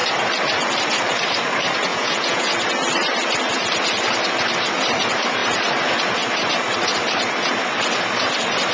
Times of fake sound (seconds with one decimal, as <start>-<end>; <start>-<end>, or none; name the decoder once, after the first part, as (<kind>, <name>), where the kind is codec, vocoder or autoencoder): 1.9-2.5 (vocoder, Vocos)